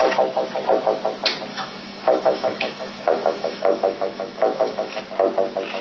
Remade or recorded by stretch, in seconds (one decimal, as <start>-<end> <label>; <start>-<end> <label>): 0.0-1.5 recorded; 1.5-5.0 remade; 5.0-5.8 recorded